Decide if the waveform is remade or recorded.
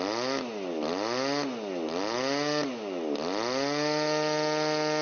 recorded